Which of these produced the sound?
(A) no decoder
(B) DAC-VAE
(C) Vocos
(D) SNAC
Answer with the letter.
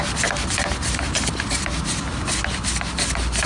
A